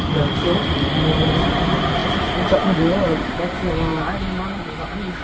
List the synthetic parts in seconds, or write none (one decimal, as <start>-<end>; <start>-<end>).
2.0-3.3